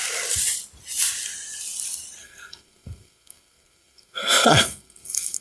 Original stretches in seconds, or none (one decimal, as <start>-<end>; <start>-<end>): 0.0-2.2